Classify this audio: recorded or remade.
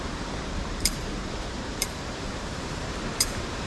remade